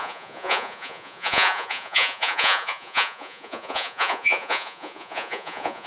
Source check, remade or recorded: remade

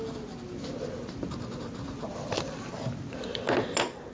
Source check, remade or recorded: recorded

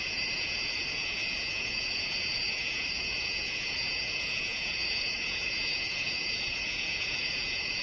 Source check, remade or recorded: remade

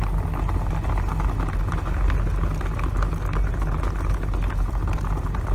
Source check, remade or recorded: recorded